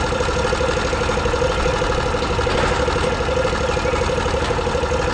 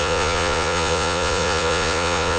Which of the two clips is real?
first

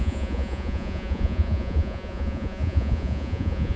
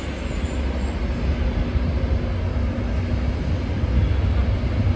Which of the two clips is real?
second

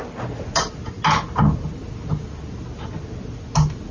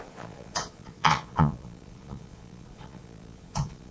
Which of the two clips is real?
first